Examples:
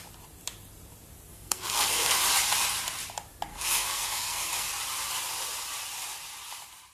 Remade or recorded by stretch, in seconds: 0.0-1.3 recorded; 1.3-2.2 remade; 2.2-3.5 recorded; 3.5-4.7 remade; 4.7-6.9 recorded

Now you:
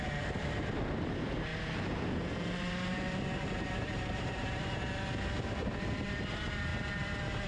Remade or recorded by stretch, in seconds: 0.0-7.5 remade